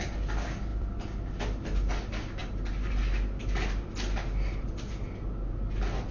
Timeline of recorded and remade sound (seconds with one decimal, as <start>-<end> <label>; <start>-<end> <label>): 0.0-6.1 recorded